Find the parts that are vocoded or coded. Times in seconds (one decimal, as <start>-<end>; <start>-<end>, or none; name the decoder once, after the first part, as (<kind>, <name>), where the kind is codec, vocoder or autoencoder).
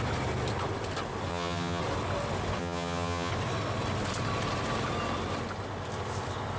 1.3-1.8 (vocoder, HiFi-GAN); 2.6-3.3